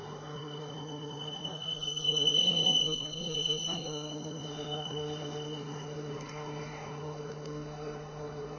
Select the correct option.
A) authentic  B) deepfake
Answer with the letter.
B